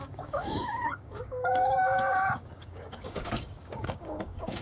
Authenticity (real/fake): fake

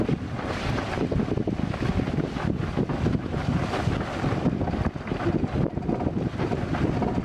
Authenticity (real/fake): real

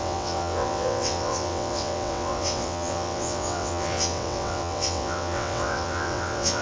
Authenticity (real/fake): fake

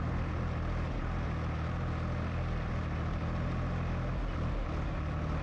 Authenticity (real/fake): real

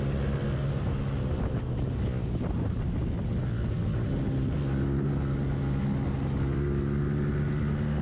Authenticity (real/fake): real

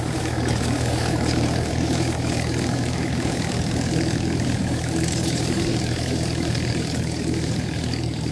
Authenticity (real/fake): fake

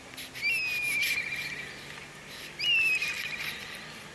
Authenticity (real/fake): real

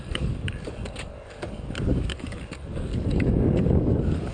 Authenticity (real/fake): fake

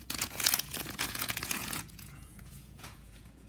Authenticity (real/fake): fake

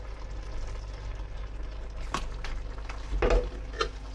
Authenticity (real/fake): real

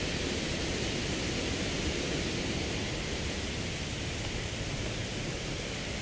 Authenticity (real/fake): real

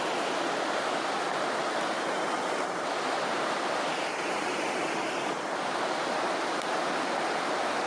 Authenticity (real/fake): real